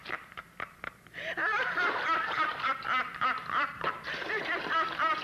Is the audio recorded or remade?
remade